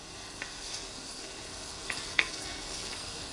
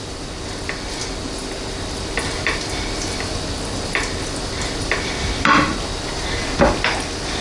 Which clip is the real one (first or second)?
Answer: second